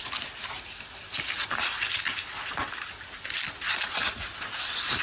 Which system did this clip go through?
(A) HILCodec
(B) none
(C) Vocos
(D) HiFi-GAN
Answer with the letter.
B